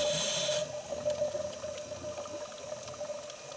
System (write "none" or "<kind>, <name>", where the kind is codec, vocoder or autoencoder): none